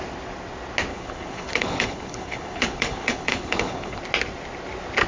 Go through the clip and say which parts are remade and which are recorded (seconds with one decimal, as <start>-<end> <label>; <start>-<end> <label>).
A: 0.0-0.9 recorded; 0.9-4.0 remade; 4.0-5.1 recorded